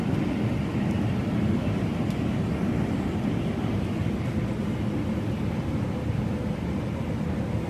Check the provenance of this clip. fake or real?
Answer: real